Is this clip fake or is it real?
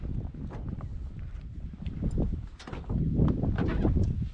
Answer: real